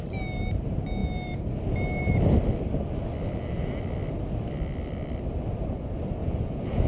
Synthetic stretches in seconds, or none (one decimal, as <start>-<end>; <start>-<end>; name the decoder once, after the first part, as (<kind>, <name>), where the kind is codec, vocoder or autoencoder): 6.2-6.9 (vocoder, Vocos)

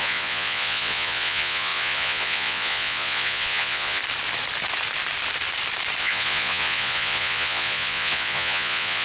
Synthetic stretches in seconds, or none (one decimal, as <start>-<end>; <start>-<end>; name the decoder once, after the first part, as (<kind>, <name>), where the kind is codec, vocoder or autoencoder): 0.0-4.0 (vocoder, Vocos); 6.0-9.0

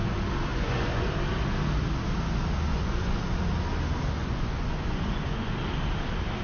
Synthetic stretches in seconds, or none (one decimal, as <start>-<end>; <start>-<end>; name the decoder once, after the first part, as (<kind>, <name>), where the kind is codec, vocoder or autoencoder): 0.5-1.1 (vocoder, Vocos); 2.7-3.2; 4.2-5.5